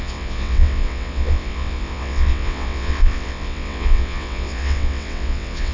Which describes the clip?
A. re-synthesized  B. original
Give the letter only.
A